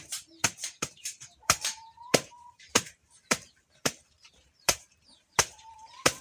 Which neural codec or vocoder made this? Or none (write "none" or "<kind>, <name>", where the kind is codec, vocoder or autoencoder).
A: vocoder, BigVGAN v2